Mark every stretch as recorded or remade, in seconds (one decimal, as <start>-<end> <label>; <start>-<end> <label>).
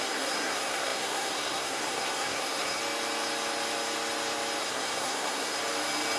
0.0-2.8 remade; 2.8-4.6 recorded; 4.6-5.6 remade; 5.6-6.2 recorded